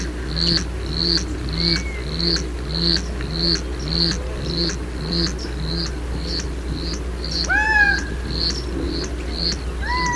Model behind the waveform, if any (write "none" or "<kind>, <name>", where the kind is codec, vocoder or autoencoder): none